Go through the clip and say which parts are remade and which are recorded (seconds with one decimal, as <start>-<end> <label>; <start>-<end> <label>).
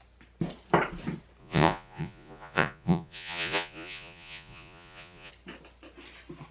0.0-1.4 recorded; 1.4-5.3 remade; 5.3-6.5 recorded